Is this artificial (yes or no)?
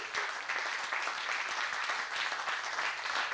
no